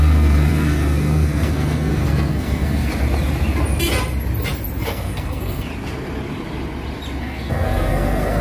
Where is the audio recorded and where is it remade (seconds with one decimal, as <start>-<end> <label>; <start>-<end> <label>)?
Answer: 0.0-2.9 remade; 2.9-4.8 recorded; 4.8-5.7 remade; 5.7-7.2 recorded; 7.2-8.4 remade